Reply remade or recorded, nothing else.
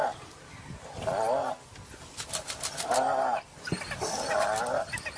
recorded